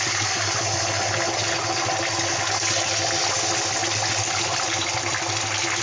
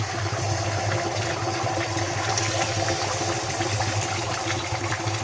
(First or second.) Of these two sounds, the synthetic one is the second